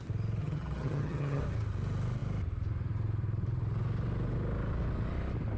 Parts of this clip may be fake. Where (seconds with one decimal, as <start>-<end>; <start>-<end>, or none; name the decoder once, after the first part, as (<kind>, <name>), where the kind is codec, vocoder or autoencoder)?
0.4-1.4 (vocoder, HiFi-GAN)